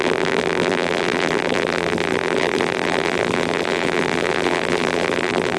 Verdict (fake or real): fake